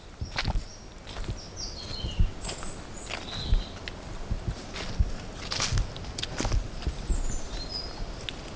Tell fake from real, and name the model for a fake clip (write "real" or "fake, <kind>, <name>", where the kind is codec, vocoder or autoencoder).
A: real